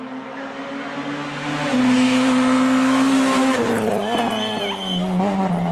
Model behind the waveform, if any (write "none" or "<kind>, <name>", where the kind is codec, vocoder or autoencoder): none